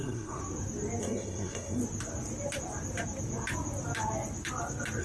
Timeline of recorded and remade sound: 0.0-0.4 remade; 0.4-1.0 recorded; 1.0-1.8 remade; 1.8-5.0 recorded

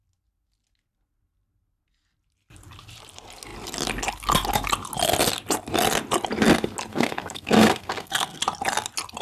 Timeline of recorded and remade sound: 0.0-6.9 recorded; 6.9-8.4 remade; 8.4-9.2 recorded

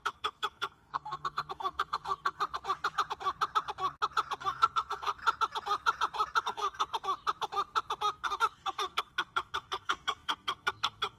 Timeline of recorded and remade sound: 0.0-2.4 remade; 2.4-4.4 recorded; 4.4-5.2 remade; 5.2-6.4 recorded; 6.4-6.9 remade; 6.9-8.1 recorded; 8.1-11.2 remade